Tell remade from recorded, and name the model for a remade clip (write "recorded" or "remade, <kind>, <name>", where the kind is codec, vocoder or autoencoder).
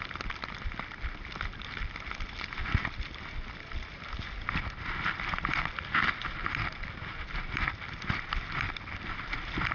recorded